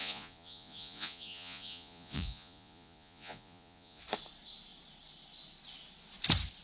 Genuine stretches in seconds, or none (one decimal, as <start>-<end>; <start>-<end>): 4.0-6.6